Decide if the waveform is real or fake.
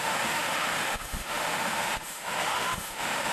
fake